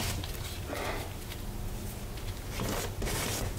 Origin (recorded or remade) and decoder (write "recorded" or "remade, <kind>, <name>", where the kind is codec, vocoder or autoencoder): recorded